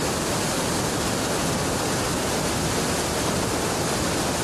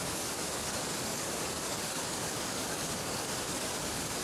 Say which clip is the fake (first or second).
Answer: second